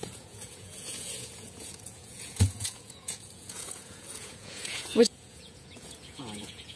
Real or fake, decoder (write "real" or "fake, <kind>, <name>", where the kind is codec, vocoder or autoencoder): fake, vocoder, Vocos